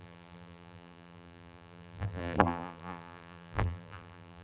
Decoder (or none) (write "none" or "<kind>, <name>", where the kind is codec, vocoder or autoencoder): vocoder, BigVGAN v2